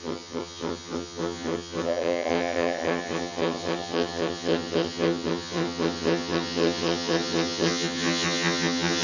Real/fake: fake